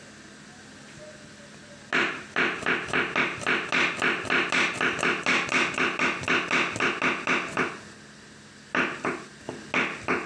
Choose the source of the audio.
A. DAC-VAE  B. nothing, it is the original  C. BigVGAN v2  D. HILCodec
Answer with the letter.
B